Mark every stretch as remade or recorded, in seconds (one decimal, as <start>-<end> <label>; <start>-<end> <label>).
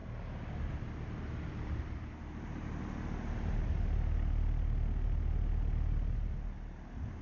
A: 0.0-7.2 recorded